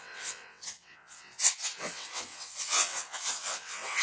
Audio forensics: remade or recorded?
remade